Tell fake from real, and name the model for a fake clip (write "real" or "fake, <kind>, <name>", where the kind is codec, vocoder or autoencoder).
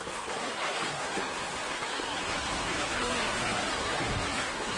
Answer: fake, codec, SNAC